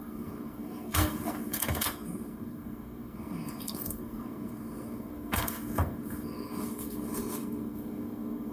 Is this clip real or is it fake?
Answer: fake